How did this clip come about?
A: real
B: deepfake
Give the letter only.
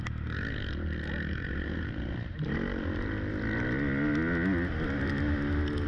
A